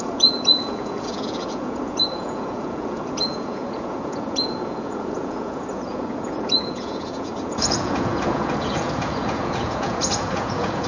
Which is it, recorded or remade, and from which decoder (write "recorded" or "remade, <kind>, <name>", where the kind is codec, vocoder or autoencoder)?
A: remade, vocoder, Vocos